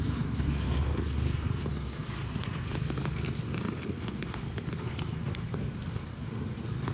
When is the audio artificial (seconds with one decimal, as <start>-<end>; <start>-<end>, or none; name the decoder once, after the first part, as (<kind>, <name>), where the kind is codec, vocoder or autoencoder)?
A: 0.0-6.9 (codec, SNAC)